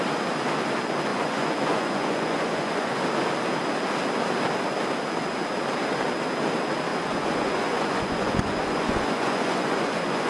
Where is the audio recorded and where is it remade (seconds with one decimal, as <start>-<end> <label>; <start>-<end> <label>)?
0.0-1.1 recorded; 1.1-3.0 remade; 3.0-6.9 recorded; 6.9-10.3 remade